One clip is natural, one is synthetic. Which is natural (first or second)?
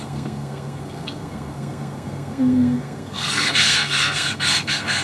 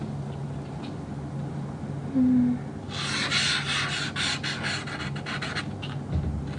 second